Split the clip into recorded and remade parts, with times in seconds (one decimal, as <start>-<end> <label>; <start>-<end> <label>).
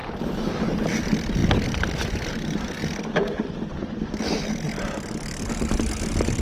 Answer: 0.0-1.0 remade; 1.0-1.4 recorded; 1.4-2.8 remade; 2.8-3.2 recorded; 3.2-4.2 remade; 4.2-6.4 recorded